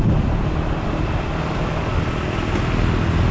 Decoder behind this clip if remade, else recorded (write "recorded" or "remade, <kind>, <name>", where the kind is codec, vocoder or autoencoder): recorded